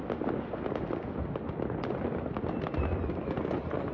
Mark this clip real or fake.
real